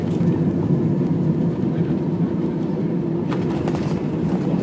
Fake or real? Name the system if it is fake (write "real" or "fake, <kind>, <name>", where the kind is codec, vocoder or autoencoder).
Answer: real